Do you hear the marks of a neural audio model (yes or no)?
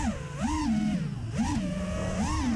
no